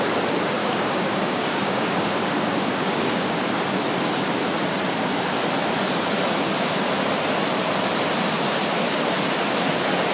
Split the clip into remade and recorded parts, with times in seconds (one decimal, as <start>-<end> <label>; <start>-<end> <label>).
0.0-0.6 recorded; 0.6-3.6 remade; 3.6-10.1 recorded